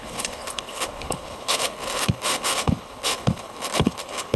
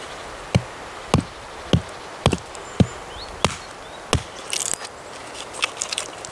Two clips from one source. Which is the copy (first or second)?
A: first